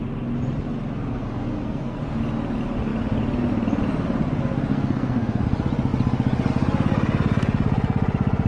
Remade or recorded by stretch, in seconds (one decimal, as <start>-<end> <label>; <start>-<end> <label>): 0.0-1.1 recorded; 1.1-2.0 remade; 2.0-4.7 recorded; 4.7-5.4 remade; 5.4-8.5 recorded